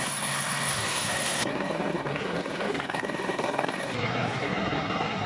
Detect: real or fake fake